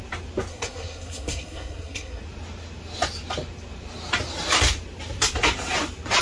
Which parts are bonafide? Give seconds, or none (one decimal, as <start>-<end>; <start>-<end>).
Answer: 0.0-0.5; 2.2-6.2